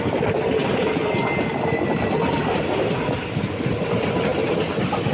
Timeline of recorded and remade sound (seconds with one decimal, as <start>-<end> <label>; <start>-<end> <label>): 0.0-5.1 recorded